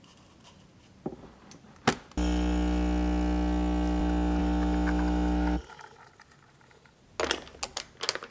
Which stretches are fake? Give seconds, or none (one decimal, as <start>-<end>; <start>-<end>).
none